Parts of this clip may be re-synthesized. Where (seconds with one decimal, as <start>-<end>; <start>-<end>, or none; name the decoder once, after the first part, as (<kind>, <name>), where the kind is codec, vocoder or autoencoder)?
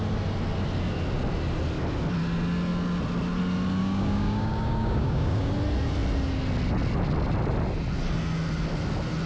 3.8-5.5 (codec, DAC)